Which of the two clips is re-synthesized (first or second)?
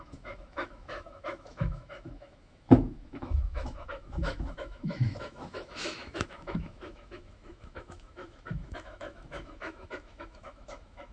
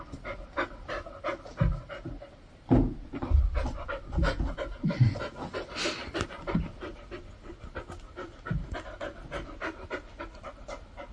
first